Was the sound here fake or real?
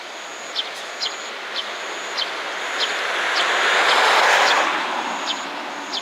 real